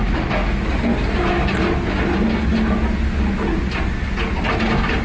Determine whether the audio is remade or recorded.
recorded